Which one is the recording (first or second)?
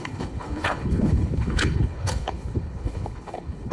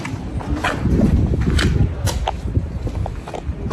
second